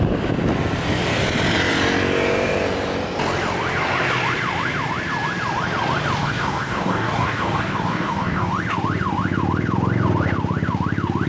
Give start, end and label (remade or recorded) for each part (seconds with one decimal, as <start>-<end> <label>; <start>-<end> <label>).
0.0-6.2 recorded; 6.2-8.5 remade; 8.5-11.3 recorded